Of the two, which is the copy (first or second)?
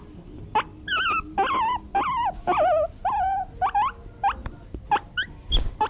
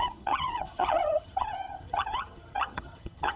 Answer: second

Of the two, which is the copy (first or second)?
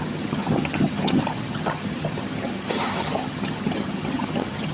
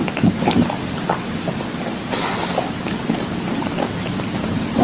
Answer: first